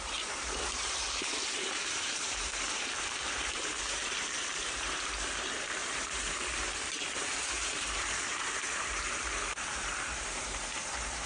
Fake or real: fake